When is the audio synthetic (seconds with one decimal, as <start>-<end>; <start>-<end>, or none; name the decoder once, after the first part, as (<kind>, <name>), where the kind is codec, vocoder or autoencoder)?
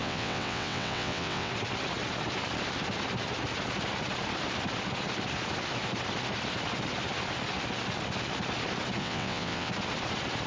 0.0-1.5 (vocoder, WaveNeXt); 9.0-9.7